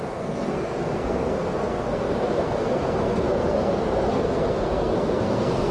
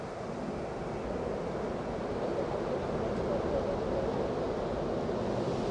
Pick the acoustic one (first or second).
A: second